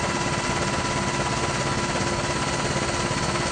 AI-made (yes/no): no